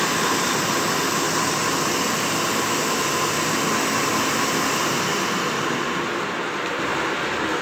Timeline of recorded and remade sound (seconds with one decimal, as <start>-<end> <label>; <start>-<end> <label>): 0.0-7.6 recorded